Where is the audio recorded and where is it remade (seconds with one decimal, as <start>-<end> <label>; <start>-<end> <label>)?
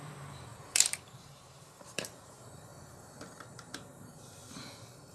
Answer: 0.0-2.7 remade; 2.7-3.4 recorded; 3.4-4.4 remade; 4.4-5.1 recorded